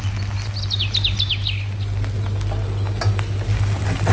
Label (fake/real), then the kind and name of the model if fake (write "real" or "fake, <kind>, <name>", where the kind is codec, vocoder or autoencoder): real